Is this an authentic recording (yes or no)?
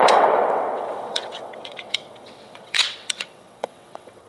no